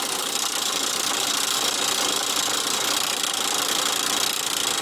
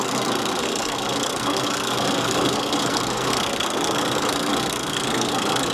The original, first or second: first